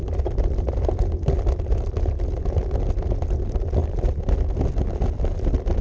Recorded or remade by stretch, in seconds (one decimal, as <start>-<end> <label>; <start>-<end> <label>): 0.0-5.8 recorded